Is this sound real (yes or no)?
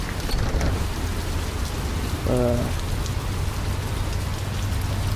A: yes